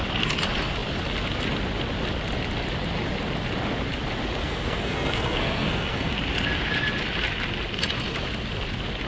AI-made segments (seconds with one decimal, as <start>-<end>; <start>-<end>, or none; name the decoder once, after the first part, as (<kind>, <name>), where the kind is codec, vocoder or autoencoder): 4.4-6.1 (codec, SNAC)

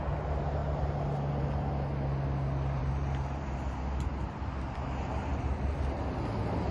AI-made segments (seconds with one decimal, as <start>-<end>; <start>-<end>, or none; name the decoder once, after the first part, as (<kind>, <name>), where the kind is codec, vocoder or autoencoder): 2.8-3.5 (vocoder, BigVGAN v2)